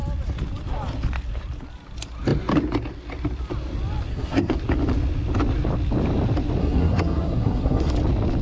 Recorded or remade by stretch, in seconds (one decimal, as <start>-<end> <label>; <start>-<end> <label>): 0.0-4.1 recorded; 4.1-4.6 remade; 4.6-6.6 recorded; 6.6-7.9 remade; 7.9-8.4 recorded